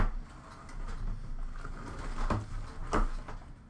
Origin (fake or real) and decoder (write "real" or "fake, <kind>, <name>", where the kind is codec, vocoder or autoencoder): real